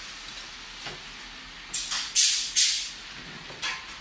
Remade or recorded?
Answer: recorded